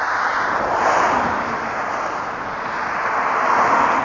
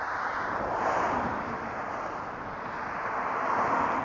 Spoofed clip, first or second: second